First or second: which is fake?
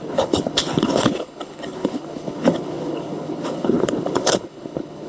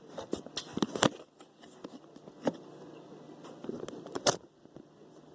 first